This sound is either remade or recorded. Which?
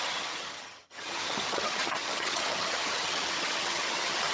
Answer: remade